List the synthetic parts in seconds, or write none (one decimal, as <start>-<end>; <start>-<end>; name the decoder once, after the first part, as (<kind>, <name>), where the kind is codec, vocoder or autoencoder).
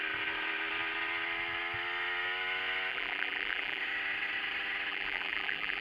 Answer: 2.9-3.8 (vocoder, BigVGAN v2); 4.9-5.8